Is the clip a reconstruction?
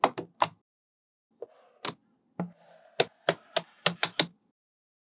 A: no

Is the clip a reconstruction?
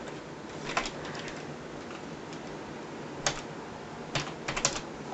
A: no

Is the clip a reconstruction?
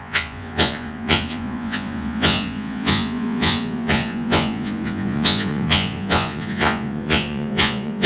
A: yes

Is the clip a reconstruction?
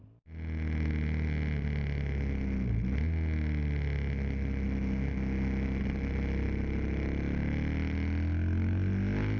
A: no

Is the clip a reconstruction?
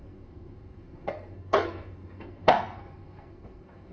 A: yes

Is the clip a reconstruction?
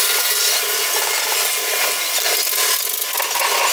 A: no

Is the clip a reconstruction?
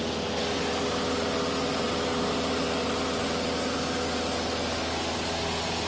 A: no